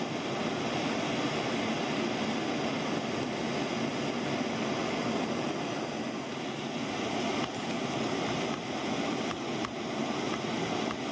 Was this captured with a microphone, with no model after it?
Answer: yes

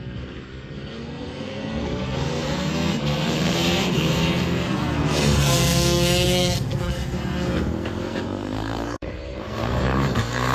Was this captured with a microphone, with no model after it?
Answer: no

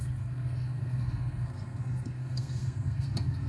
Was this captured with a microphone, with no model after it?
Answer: no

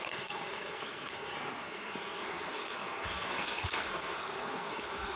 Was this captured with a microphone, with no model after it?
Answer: no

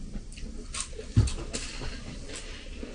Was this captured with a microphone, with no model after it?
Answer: yes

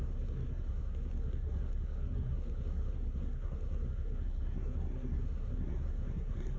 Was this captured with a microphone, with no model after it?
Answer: no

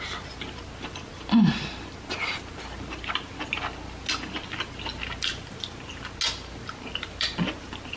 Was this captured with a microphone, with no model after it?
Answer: yes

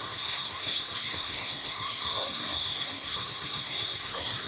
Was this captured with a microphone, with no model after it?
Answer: no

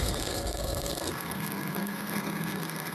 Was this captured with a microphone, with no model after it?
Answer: no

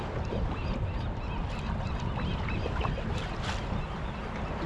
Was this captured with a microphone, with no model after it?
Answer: yes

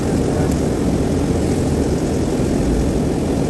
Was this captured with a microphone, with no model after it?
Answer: yes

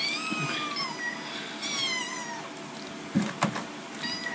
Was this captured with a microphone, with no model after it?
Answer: yes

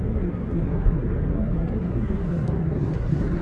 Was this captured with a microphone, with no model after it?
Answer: no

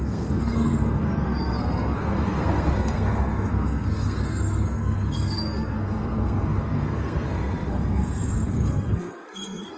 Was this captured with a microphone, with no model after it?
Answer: no